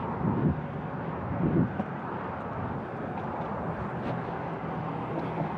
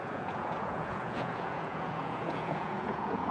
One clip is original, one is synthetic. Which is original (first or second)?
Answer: first